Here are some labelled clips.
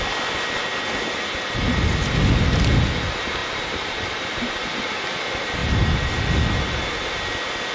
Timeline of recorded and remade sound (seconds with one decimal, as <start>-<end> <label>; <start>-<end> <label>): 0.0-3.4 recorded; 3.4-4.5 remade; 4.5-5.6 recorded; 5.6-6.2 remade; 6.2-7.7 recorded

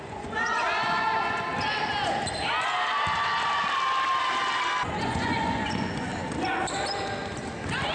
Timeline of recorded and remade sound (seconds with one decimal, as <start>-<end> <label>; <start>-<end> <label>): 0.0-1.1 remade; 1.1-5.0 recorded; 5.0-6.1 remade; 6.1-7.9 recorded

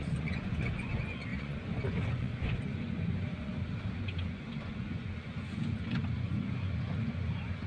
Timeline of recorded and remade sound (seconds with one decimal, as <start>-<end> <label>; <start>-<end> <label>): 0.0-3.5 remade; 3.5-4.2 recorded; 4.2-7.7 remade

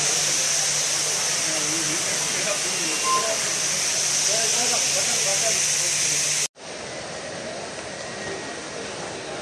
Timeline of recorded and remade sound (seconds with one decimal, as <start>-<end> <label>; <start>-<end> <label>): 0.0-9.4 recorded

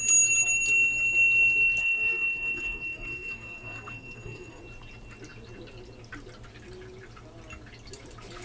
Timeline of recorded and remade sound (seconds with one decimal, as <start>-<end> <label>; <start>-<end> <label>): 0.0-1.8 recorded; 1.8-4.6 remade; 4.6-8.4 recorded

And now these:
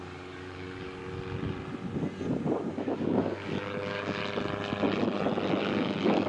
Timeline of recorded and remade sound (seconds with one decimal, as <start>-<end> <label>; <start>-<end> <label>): 0.0-1.0 remade; 1.0-2.7 recorded; 2.7-4.2 remade; 4.2-5.6 recorded; 5.6-6.3 remade

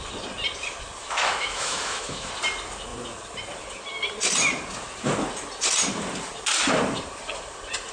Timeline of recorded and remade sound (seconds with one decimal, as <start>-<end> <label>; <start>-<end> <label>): 0.0-1.0 recorded; 1.0-2.3 remade; 2.3-7.9 recorded